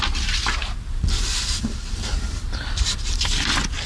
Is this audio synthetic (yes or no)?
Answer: no